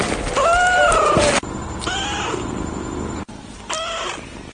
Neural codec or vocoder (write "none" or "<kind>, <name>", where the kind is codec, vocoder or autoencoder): none